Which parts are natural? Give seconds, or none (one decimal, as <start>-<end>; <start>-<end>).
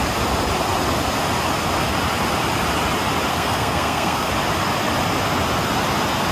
0.0-3.3; 4.3-6.3